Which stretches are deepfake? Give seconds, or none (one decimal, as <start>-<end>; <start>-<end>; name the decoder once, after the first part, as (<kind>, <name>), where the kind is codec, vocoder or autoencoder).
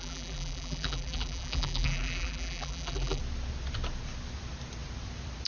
0.0-3.2 (vocoder, BigVGAN v2)